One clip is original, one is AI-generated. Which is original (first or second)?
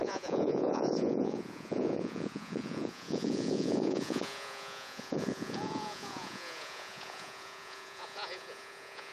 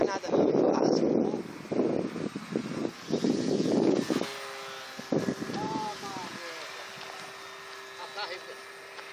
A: second